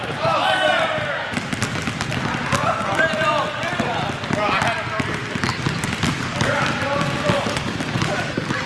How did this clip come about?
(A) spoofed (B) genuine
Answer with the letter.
B